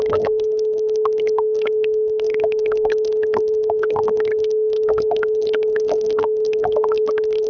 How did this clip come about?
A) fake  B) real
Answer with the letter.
A